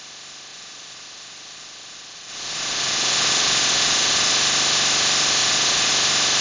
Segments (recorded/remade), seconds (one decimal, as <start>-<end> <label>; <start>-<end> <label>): 0.0-0.5 recorded; 0.5-4.3 remade; 4.3-5.4 recorded; 5.4-5.9 remade; 5.9-6.4 recorded